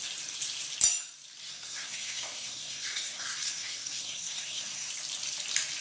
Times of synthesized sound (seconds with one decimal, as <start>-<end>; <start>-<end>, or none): 1.4-4.9